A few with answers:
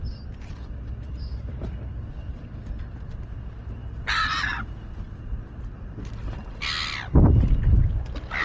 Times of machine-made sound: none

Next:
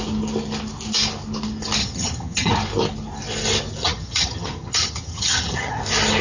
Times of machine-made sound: 1.8-2.5; 3.8-5.8

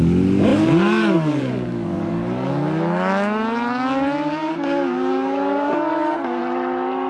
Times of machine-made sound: 0.0-6.4

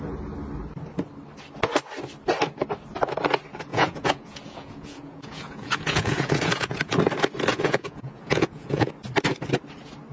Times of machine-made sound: 3.7-7.0; 7.5-8.9

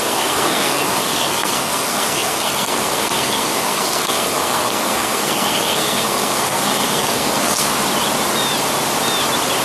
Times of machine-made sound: 0.0-7.7

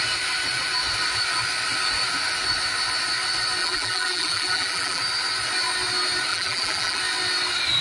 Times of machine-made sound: 3.6-5.0; 6.3-7.0

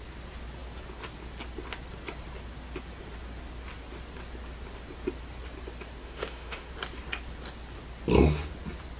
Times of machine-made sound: 6.0-6.7

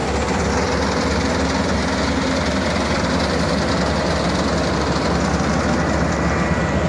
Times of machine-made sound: none